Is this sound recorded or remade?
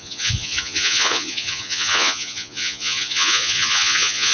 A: remade